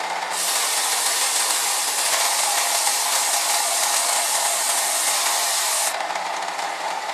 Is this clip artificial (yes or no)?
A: no